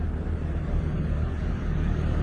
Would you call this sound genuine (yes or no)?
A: no